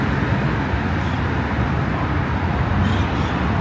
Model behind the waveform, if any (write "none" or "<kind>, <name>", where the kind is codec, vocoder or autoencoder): none